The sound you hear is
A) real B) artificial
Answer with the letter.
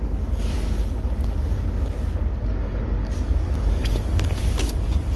B